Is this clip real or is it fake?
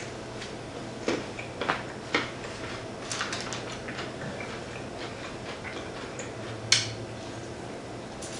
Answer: real